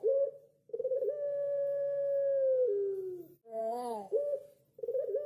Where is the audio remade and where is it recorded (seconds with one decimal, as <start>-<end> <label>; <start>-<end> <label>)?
0.0-3.6 recorded; 3.6-4.2 remade; 4.2-5.3 recorded